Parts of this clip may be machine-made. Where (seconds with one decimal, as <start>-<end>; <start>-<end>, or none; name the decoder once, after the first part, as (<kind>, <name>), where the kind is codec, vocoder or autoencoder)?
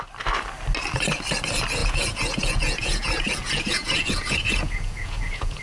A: 1.8-5.6 (vocoder, Vocos)